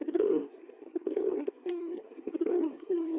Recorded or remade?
remade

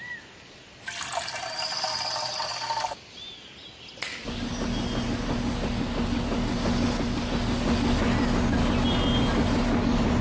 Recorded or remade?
recorded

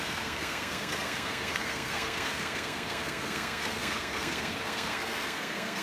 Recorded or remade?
remade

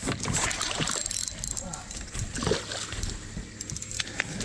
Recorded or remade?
recorded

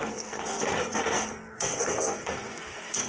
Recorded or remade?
remade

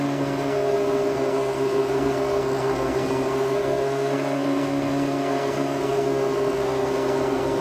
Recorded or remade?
remade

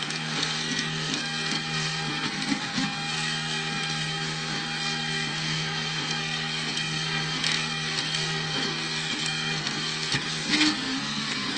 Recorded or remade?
remade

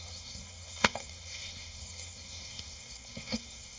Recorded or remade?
remade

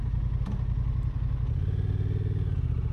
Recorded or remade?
recorded